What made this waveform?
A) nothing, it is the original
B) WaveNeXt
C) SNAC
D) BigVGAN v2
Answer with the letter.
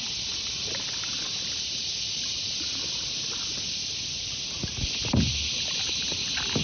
A